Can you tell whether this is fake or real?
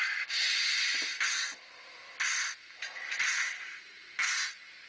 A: real